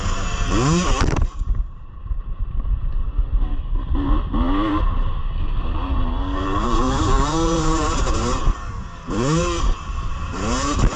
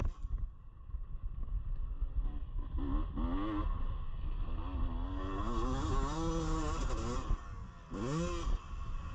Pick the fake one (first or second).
first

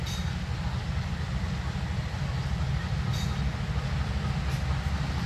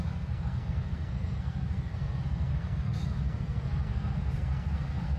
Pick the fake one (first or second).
second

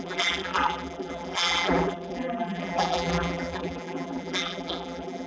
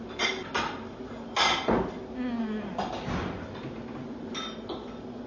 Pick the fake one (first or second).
first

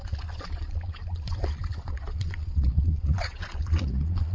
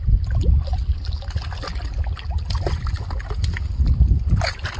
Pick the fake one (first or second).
first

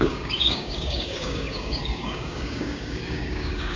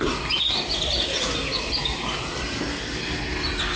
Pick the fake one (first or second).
first